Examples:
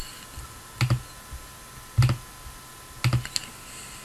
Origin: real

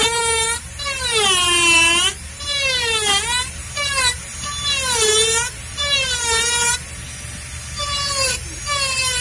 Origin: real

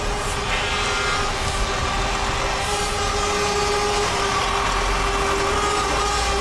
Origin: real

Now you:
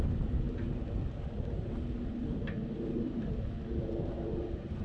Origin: real